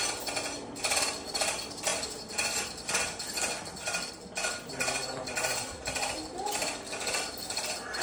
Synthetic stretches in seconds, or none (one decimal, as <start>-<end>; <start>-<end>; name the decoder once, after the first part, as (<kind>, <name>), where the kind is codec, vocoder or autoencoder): none